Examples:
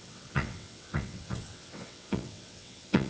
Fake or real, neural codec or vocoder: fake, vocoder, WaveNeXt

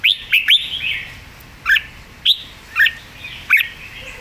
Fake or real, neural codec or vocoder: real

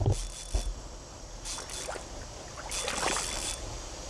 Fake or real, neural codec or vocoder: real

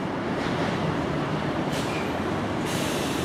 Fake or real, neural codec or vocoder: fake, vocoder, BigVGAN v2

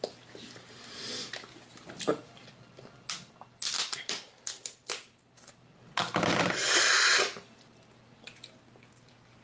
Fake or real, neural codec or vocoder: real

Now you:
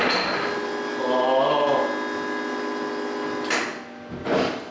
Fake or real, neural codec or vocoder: real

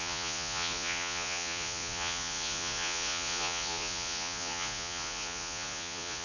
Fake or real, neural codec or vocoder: fake, vocoder, Vocos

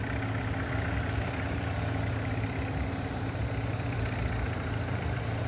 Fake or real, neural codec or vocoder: fake, vocoder, BigVGAN v2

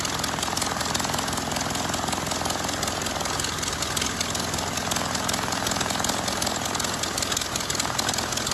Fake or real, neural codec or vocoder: real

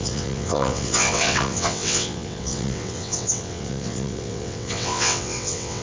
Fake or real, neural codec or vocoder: fake, vocoder, WaveNeXt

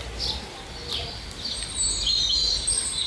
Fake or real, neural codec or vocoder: real